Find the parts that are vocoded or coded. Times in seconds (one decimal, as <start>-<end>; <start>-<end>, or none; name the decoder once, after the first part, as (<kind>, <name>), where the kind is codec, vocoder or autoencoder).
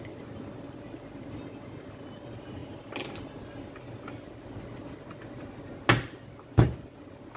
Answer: none